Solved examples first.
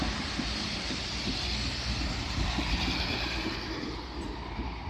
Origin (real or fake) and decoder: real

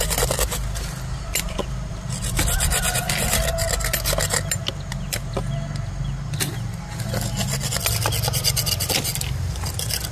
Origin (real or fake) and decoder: real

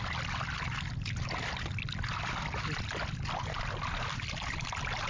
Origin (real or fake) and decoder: real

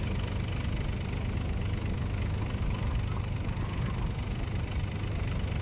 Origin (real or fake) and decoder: real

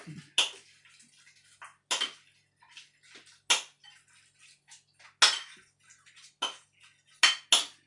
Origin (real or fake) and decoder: real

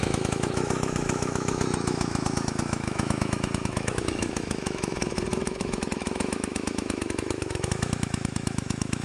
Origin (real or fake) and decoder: fake, autoencoder, DAC-VAE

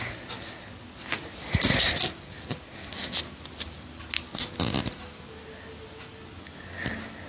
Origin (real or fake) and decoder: real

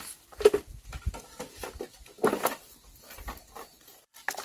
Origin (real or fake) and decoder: real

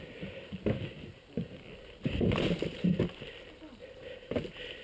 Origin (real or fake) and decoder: real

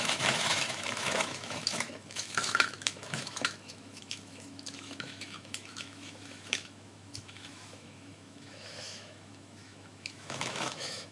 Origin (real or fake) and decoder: fake, autoencoder, DAC-VAE